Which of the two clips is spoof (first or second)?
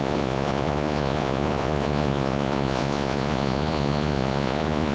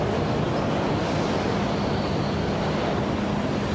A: first